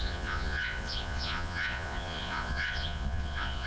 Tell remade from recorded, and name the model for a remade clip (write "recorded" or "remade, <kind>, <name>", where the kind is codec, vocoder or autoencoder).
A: remade, vocoder, Vocos